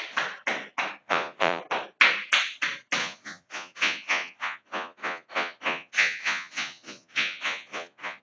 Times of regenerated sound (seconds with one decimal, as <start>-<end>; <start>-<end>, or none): 1.0-1.6; 3.0-8.2